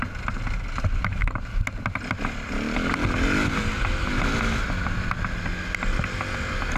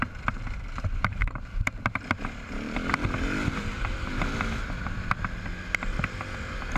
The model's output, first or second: second